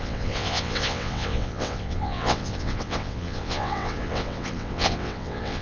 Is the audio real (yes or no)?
no